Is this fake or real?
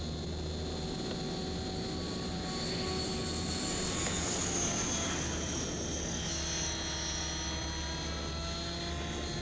real